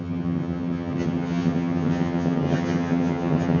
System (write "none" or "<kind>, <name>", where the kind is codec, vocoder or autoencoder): vocoder, HiFi-GAN